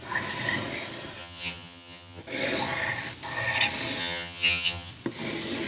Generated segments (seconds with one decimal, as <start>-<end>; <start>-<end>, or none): 1.2-2.2; 4.0-4.9